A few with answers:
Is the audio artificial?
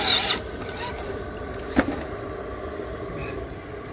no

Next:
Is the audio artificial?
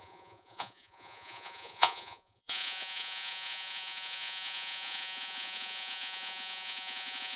yes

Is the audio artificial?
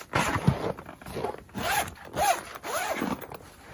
no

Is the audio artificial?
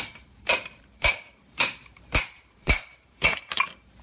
yes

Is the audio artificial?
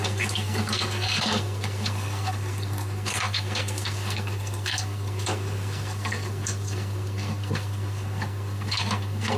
yes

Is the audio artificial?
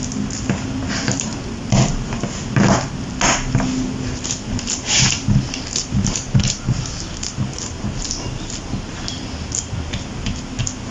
no